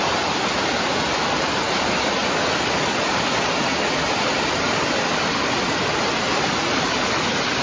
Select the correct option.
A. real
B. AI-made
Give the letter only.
A